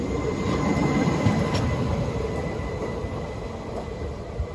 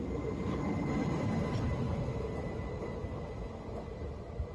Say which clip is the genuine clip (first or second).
second